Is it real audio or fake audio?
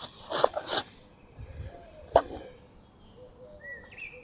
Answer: fake